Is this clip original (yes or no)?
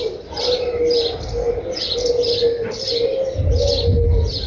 yes